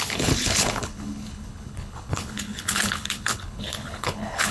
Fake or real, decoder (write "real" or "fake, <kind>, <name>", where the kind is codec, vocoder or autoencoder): fake, codec, HILCodec